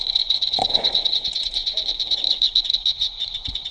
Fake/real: fake